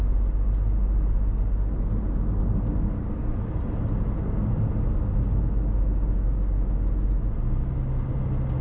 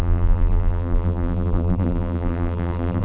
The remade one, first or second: second